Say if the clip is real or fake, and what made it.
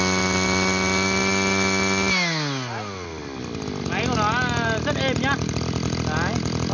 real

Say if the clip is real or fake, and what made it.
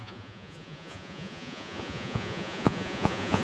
fake, vocoder, Vocos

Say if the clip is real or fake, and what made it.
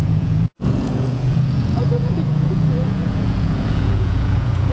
fake, vocoder, Vocos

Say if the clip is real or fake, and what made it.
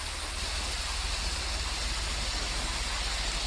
real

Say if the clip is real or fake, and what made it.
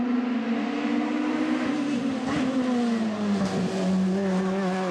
real